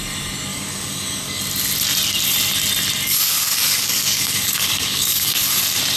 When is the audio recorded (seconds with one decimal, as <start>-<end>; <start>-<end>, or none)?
0.0-0.5; 1.4-3.1; 5.5-6.0